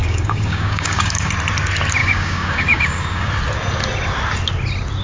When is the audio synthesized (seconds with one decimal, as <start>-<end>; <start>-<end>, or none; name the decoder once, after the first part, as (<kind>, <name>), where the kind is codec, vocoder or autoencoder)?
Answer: 0.0-1.3 (codec, DAC); 2.0-3.3